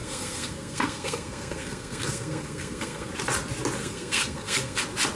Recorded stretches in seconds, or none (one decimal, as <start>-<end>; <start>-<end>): 3.1-3.8; 4.8-5.2